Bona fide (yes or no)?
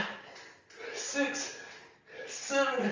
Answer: yes